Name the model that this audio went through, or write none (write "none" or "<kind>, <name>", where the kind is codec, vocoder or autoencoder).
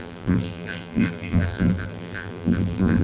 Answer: vocoder, BigVGAN v2